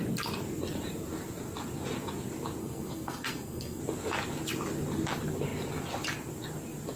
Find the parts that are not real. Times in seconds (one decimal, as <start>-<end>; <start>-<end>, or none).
2.6-3.8